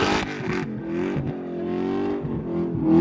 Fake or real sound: real